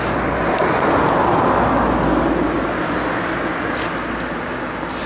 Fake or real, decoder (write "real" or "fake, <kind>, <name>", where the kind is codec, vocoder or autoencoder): real